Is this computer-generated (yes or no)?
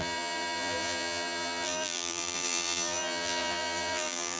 yes